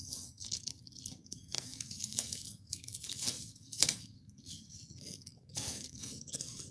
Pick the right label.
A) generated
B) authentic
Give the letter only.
A